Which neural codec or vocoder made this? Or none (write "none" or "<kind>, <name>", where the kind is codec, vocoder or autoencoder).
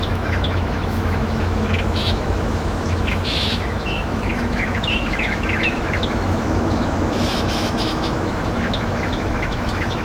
autoencoder, DAC-VAE